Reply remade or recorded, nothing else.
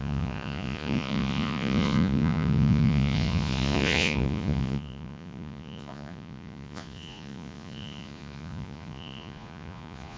remade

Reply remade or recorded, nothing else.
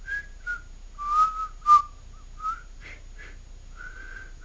recorded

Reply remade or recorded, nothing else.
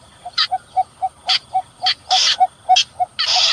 recorded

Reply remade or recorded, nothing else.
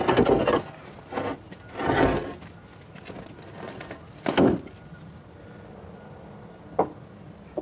recorded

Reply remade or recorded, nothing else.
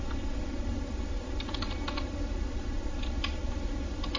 recorded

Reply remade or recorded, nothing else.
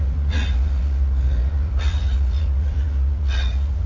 remade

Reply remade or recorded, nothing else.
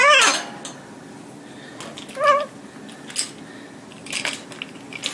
recorded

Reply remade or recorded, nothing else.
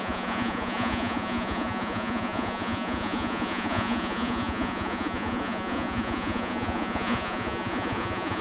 remade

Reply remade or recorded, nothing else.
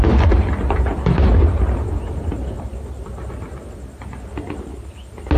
recorded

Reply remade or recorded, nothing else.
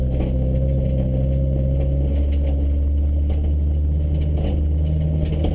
recorded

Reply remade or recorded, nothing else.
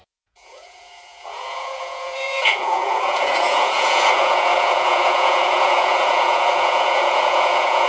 remade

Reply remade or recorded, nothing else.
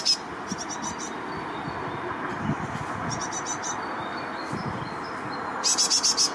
recorded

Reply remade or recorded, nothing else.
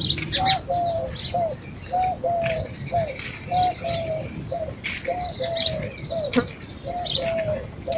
recorded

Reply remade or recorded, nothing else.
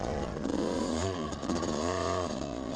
remade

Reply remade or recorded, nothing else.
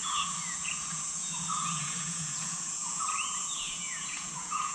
remade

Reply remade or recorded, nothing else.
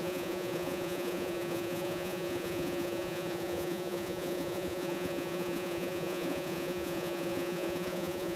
remade